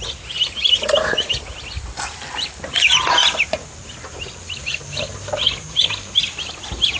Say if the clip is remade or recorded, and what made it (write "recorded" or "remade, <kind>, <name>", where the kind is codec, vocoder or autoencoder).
recorded